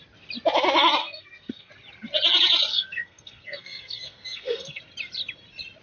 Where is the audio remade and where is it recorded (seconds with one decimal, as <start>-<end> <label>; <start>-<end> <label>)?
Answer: 0.0-1.0 recorded; 1.0-1.7 remade; 1.7-2.7 recorded; 2.7-4.8 remade; 4.8-5.8 recorded